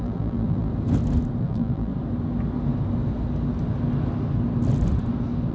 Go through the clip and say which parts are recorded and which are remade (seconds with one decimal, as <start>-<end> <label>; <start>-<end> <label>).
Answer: 0.0-0.7 remade; 0.7-1.4 recorded; 1.4-1.9 remade; 1.9-5.5 recorded